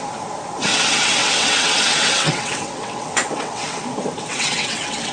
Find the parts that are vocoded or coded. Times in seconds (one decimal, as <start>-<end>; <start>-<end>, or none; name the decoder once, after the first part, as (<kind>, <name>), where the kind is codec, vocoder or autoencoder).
0.7-3.8 (vocoder, WaveNeXt); 4.3-5.1

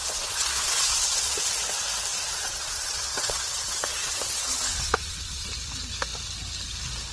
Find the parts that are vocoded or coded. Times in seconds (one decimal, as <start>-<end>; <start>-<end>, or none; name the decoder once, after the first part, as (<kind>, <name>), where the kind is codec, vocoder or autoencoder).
0.0-1.4 (vocoder, WaveNeXt); 2.1-5.5